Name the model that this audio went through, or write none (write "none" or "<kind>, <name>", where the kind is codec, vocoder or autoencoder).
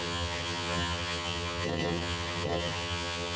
vocoder, HiFi-GAN